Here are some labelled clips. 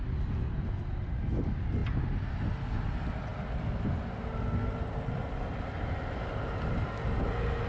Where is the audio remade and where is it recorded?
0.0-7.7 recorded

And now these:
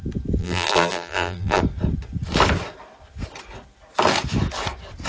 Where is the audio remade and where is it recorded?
0.0-0.4 recorded; 0.4-1.6 remade; 1.6-5.1 recorded

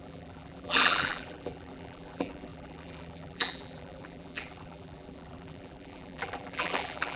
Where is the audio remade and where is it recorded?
0.0-7.2 remade

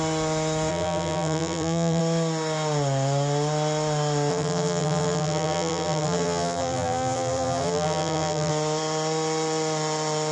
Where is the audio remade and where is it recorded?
0.0-0.7 recorded; 0.7-2.0 remade; 2.0-4.3 recorded; 4.3-8.5 remade; 8.5-10.3 recorded